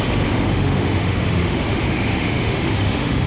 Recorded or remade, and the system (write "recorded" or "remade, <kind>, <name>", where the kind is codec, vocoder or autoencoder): remade, autoencoder, DAC-VAE